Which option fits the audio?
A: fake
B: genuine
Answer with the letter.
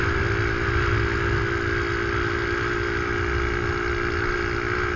B